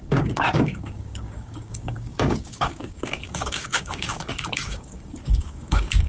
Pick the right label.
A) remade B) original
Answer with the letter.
A